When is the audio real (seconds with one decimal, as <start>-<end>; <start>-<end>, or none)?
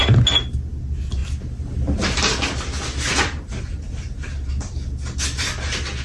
0.0-6.0